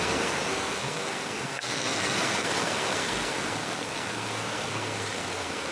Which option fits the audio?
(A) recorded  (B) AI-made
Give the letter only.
B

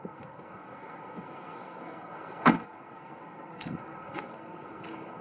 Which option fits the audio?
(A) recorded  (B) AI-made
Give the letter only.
B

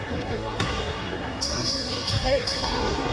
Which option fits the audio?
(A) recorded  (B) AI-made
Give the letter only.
B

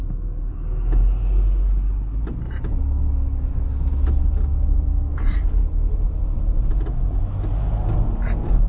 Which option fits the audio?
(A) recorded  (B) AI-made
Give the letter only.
A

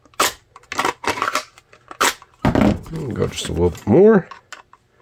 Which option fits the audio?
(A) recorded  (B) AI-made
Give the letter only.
A